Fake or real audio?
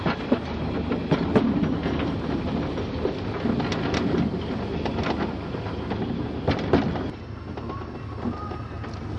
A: real